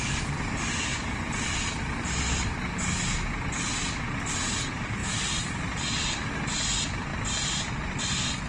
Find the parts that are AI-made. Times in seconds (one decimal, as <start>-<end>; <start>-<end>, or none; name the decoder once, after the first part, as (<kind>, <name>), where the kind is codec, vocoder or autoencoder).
5.0-6.3 (vocoder, BigVGAN v2)